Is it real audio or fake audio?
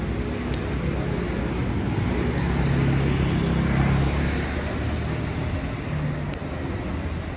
real